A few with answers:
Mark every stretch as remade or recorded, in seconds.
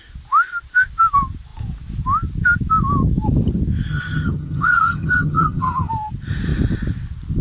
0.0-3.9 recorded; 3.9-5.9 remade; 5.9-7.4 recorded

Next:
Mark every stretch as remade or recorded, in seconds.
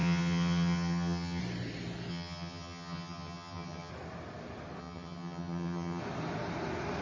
0.0-1.4 remade; 1.4-2.1 recorded; 2.1-3.9 remade; 3.9-4.8 recorded; 4.8-6.0 remade; 6.0-7.0 recorded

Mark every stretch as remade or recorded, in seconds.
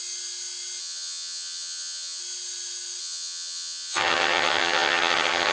0.0-0.8 recorded; 0.8-2.2 remade; 2.2-3.0 recorded; 3.0-5.5 remade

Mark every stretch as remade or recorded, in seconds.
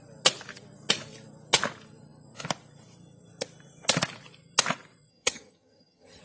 0.0-5.1 recorded; 5.1-6.2 remade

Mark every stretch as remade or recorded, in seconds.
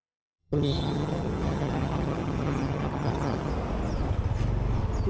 0.0-0.4 recorded; 0.4-3.5 remade; 3.5-5.1 recorded